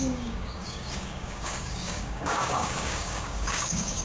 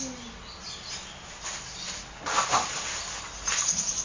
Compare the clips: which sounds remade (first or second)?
first